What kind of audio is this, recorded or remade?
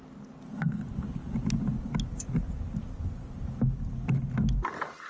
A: recorded